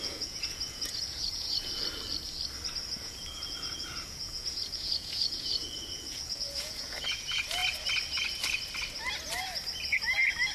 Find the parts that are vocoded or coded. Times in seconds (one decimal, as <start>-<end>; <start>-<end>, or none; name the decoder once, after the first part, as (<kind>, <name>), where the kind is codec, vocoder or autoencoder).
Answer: 0.0-1.7 (vocoder, Vocos); 2.9-7.6